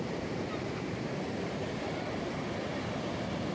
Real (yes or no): yes